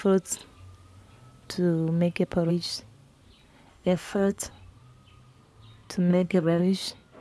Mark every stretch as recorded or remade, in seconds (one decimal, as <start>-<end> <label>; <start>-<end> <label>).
0.0-3.7 recorded; 3.7-4.5 remade; 4.5-6.1 recorded; 6.1-6.6 remade; 6.6-7.2 recorded